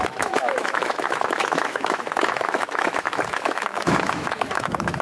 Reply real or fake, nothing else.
fake